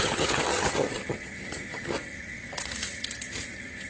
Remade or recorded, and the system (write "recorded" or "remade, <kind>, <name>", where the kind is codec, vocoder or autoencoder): remade, vocoder, HiFi-GAN